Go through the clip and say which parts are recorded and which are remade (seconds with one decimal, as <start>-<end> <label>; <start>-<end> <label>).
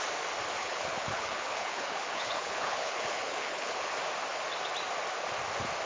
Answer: 0.0-0.6 recorded; 0.6-3.9 remade; 3.9-5.9 recorded